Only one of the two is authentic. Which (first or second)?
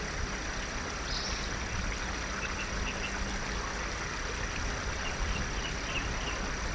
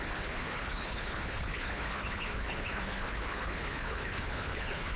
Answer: first